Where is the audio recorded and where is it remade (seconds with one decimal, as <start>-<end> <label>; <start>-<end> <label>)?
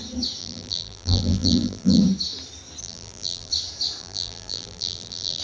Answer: 0.0-0.4 recorded; 0.4-2.0 remade; 2.0-2.8 recorded; 2.8-3.5 remade; 3.5-4.0 recorded; 4.0-5.4 remade